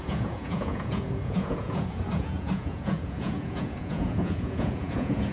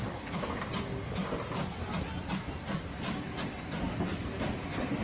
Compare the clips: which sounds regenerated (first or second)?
first